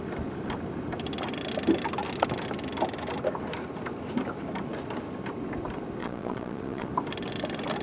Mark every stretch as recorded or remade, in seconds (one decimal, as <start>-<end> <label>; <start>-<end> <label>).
0.0-6.0 recorded; 6.0-6.9 remade; 6.9-7.8 recorded